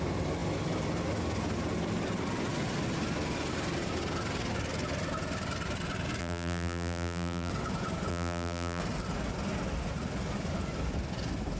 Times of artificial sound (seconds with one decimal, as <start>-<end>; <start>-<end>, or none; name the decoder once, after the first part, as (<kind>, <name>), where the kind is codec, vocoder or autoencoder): 6.2-7.5 (vocoder, BigVGAN v2); 8.1-8.8